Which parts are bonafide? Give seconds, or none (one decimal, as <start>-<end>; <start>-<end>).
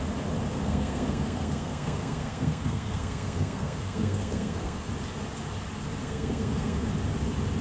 0.0-0.5; 4.9-6.0; 6.9-7.6